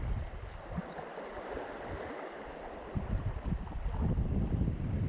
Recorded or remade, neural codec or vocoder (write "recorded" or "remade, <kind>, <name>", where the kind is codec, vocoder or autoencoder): recorded